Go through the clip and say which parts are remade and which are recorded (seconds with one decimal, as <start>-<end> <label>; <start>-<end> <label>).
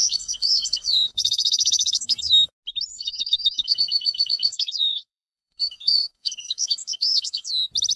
0.0-2.5 remade; 2.5-2.9 recorded; 2.9-7.5 remade; 7.5-8.0 recorded